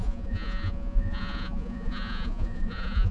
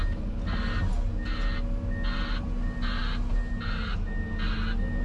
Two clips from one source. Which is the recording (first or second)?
second